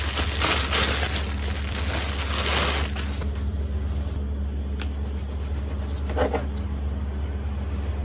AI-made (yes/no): no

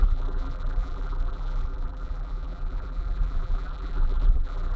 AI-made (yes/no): yes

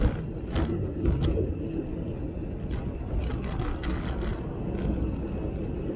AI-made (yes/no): no